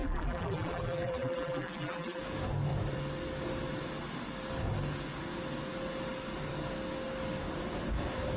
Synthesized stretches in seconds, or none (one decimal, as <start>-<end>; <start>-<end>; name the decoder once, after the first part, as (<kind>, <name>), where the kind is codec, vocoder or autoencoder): 0.0-2.2 (vocoder, BigVGAN v2)